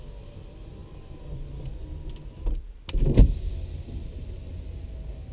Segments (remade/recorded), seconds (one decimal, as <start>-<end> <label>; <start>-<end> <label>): 0.0-5.3 recorded